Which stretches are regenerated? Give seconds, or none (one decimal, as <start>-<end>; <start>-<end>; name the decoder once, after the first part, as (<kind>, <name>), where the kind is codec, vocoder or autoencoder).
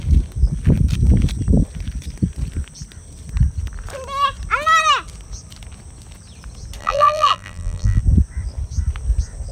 6.8-8.0 (vocoder, BigVGAN v2)